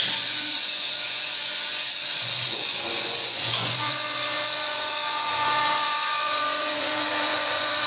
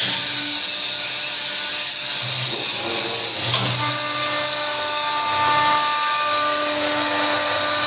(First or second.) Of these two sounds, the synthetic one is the first